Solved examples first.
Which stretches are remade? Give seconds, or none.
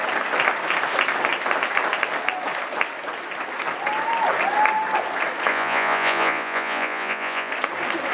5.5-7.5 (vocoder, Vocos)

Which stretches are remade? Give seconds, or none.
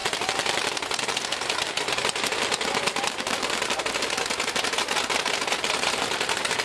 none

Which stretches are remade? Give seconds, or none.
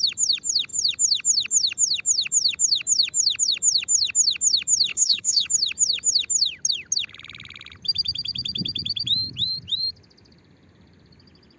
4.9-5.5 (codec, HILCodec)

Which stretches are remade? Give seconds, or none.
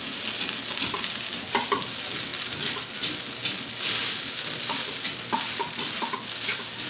none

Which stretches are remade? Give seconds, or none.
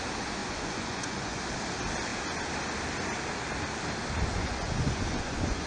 0.4-1.4 (vocoder, Vocos); 4.4-5.7